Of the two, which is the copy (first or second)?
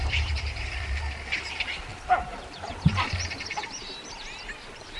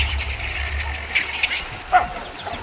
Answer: first